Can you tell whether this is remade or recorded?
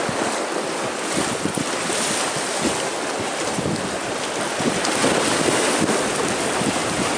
recorded